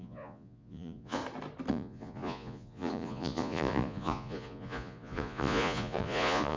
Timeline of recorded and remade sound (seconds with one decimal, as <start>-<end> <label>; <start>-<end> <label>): 0.0-1.2 remade; 1.2-1.7 recorded; 1.7-6.6 remade